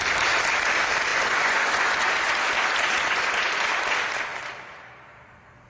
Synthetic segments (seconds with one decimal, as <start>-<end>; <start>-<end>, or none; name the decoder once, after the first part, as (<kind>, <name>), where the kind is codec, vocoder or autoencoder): 1.1-2.3 (vocoder, Vocos); 2.9-3.5